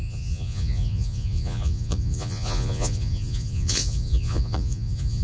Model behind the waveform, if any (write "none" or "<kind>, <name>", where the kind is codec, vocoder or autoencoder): vocoder, Vocos